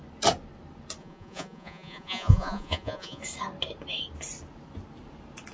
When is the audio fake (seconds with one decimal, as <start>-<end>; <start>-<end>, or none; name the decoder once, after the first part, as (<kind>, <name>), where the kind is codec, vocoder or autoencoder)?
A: 1.0-3.2 (vocoder, Vocos)